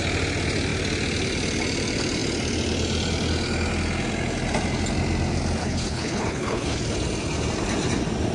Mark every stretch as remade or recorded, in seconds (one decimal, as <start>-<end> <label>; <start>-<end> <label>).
0.0-5.6 recorded; 5.6-6.8 remade; 6.8-8.3 recorded